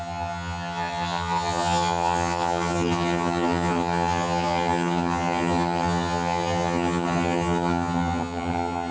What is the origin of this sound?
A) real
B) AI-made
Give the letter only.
B